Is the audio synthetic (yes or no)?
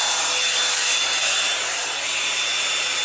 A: no